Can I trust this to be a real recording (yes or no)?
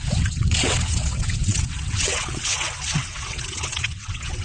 no